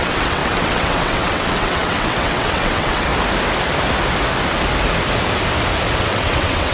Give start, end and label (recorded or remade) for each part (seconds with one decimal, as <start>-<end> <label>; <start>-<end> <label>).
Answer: 0.0-3.1 remade; 3.1-6.0 recorded; 6.0-6.7 remade

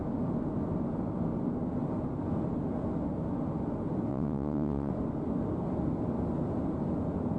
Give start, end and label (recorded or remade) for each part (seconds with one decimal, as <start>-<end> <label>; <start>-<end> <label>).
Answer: 0.0-4.1 recorded; 4.1-4.9 remade; 4.9-7.4 recorded

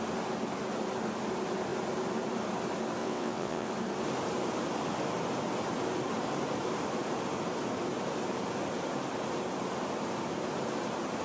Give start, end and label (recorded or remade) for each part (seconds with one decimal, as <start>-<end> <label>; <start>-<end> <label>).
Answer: 0.0-3.0 recorded; 3.0-3.7 remade; 3.7-11.2 recorded

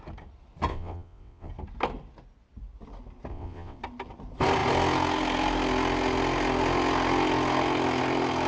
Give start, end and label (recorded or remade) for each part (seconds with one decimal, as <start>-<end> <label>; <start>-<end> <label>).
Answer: 0.0-0.7 recorded; 0.7-1.5 remade; 1.5-3.3 recorded; 3.3-3.8 remade; 3.8-8.5 recorded

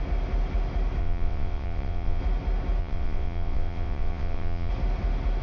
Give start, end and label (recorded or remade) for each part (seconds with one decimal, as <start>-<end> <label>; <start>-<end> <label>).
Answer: 0.0-1.0 recorded; 1.0-2.2 remade; 2.2-2.8 recorded; 2.8-4.7 remade; 4.7-5.4 recorded

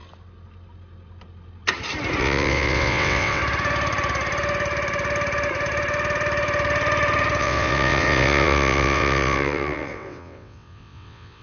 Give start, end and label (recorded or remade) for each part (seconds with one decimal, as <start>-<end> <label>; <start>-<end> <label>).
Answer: 0.0-2.2 recorded; 2.2-3.4 remade; 3.4-7.4 recorded; 7.4-11.4 remade

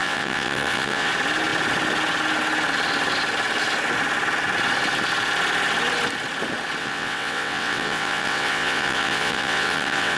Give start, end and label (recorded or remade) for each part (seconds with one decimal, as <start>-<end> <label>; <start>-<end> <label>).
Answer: 0.0-1.1 remade; 1.1-6.8 recorded; 6.8-10.2 remade

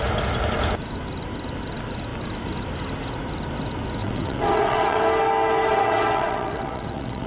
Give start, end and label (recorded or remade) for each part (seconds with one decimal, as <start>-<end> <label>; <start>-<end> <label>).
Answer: 0.0-4.0 recorded; 4.0-5.0 remade; 5.0-5.7 recorded; 5.7-7.3 remade